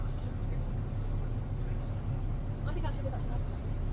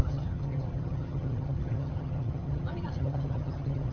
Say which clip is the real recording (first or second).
first